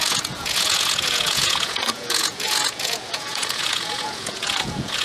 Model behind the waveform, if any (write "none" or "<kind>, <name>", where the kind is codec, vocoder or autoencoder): vocoder, Vocos